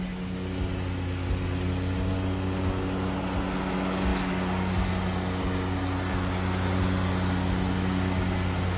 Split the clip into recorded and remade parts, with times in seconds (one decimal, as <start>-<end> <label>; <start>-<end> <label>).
0.0-8.8 recorded